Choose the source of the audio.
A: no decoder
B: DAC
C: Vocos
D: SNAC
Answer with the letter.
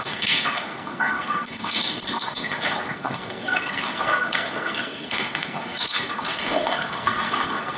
D